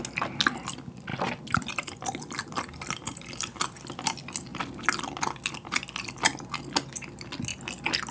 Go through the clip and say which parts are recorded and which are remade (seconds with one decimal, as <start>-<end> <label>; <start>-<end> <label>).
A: 0.0-1.1 recorded; 1.1-3.8 remade; 3.8-4.5 recorded; 4.5-5.0 remade; 5.0-8.1 recorded

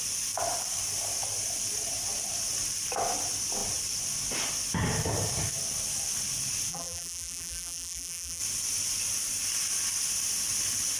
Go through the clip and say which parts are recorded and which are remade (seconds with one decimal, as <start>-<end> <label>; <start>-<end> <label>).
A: 0.0-6.7 recorded; 6.7-8.4 remade; 8.4-11.0 recorded

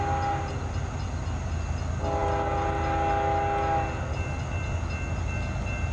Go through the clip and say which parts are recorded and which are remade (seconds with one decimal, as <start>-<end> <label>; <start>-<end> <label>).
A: 0.0-5.9 recorded

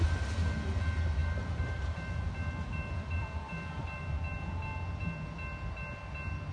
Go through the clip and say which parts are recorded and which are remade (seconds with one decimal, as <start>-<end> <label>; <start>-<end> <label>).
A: 0.0-1.2 recorded; 1.2-4.0 remade; 4.0-6.5 recorded

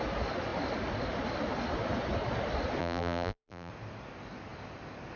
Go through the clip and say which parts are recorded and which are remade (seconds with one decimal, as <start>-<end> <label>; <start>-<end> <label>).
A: 0.0-2.8 recorded; 2.8-3.7 remade; 3.7-5.2 recorded

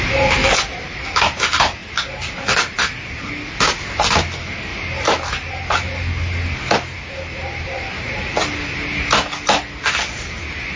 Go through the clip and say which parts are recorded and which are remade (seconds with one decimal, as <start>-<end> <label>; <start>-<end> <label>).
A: 0.0-0.4 recorded; 0.4-1.2 remade; 1.2-4.7 recorded; 4.7-5.6 remade; 5.6-7.4 recorded; 7.4-8.3 remade; 8.3-10.8 recorded

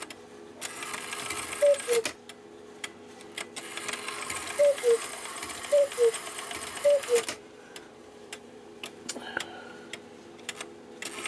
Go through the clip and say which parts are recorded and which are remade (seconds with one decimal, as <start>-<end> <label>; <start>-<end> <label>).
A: 0.0-4.6 recorded; 4.6-9.1 remade; 9.1-11.3 recorded